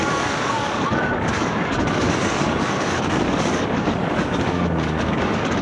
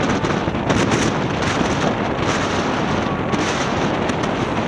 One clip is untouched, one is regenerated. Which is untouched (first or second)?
second